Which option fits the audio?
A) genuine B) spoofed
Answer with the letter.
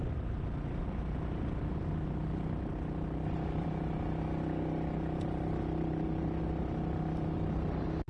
A